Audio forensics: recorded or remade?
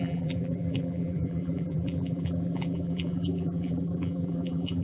remade